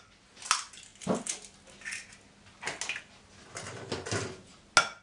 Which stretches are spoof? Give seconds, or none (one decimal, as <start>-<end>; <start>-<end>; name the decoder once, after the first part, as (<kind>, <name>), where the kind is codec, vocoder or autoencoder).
none